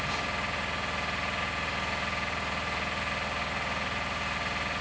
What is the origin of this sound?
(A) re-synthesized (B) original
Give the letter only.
B